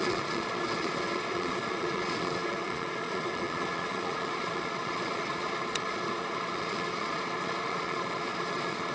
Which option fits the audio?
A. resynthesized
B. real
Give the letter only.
A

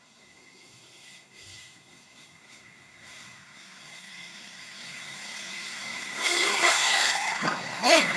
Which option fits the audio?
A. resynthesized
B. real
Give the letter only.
A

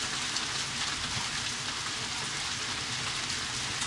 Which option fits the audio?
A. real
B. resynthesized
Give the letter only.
A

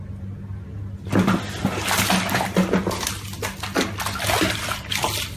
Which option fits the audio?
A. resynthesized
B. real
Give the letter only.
B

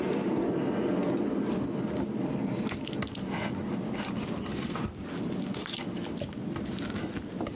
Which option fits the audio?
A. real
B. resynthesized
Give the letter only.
A